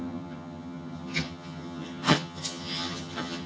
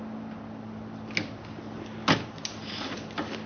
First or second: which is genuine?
second